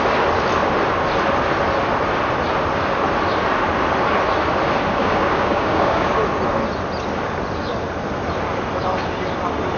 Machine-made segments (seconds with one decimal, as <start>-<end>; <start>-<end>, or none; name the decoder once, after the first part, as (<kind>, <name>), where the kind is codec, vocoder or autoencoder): 5.0-6.1 (codec, DAC)